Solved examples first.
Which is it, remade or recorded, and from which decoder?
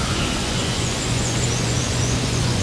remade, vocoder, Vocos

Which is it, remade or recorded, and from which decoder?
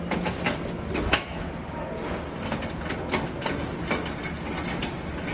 recorded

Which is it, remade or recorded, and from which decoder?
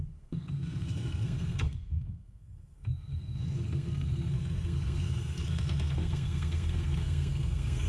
remade, codec, SNAC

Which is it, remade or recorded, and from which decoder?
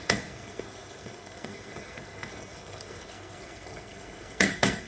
remade, codec, SNAC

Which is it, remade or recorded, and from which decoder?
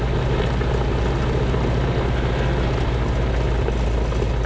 recorded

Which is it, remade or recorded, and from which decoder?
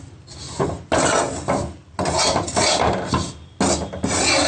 recorded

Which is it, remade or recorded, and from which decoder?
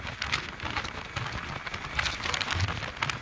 recorded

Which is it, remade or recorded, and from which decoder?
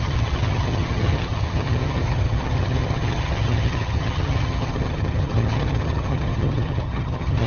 remade, vocoder, HiFi-GAN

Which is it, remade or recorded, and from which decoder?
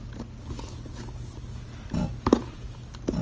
recorded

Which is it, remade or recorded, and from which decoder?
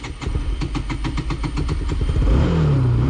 recorded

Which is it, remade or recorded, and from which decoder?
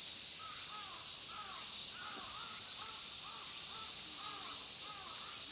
recorded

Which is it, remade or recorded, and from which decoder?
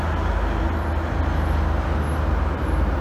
recorded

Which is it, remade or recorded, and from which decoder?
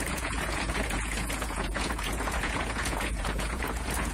remade, vocoder, Vocos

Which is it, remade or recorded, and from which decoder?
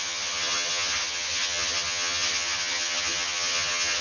remade, vocoder, HiFi-GAN